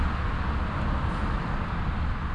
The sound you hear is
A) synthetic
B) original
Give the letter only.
B